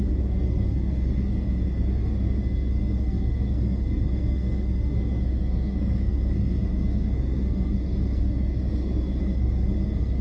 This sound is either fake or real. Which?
fake